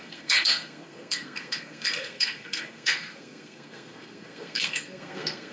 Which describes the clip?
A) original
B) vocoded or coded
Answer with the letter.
B